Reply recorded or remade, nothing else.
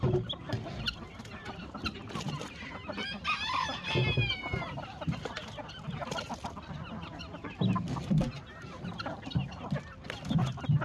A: recorded